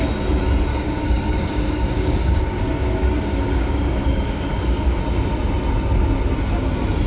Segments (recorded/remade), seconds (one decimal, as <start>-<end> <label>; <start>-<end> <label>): 0.0-0.7 recorded; 0.7-5.0 remade; 5.0-7.1 recorded